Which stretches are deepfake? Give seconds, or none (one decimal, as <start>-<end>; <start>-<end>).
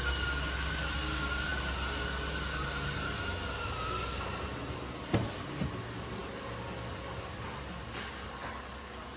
none